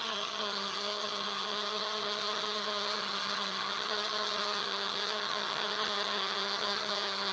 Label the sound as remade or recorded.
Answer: remade